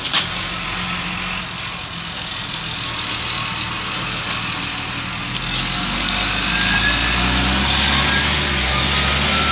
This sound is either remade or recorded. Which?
recorded